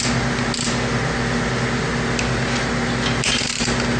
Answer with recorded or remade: recorded